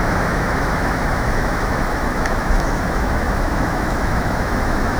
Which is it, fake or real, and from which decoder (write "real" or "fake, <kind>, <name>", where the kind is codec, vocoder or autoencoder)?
fake, autoencoder, DAC-VAE